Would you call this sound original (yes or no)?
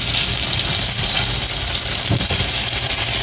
yes